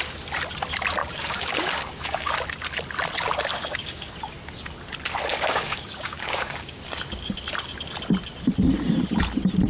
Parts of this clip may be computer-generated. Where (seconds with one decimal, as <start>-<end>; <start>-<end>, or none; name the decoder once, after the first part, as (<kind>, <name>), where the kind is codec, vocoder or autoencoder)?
1.0-2.3 (codec, DAC); 3.5-4.1; 5.3-6.8